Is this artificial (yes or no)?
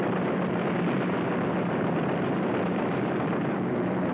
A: yes